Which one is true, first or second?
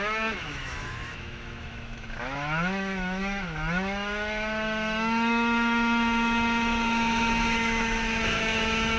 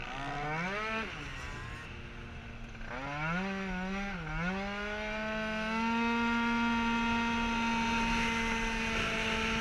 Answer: second